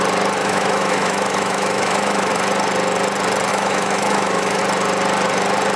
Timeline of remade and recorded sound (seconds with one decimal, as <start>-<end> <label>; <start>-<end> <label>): 0.0-0.4 recorded; 0.4-2.3 remade; 2.3-3.5 recorded; 3.5-4.6 remade; 4.6-5.8 recorded